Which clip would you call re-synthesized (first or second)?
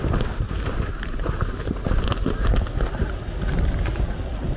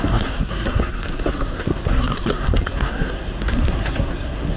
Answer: second